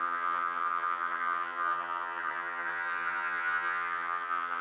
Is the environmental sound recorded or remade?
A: remade